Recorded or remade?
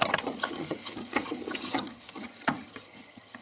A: remade